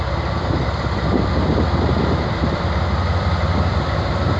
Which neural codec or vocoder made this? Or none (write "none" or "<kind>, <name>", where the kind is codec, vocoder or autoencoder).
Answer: vocoder, BigVGAN v2